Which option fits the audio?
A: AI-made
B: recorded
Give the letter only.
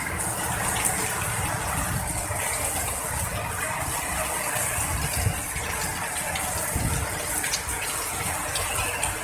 B